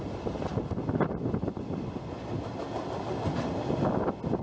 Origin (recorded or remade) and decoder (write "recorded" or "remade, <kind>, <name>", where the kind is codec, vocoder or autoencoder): recorded